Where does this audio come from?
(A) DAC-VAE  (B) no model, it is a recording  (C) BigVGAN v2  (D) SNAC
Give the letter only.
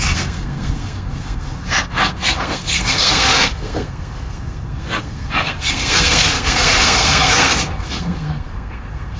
D